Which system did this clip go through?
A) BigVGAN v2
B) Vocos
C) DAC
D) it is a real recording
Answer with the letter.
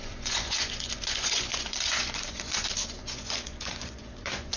B